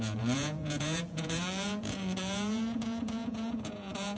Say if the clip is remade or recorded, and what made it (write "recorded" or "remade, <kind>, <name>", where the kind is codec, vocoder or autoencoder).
remade, vocoder, Vocos